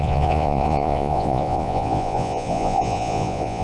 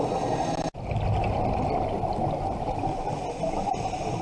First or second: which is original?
second